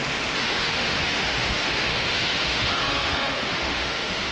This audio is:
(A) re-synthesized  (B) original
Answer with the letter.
A